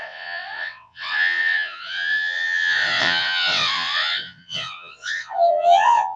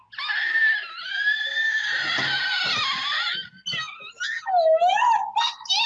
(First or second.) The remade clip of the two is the first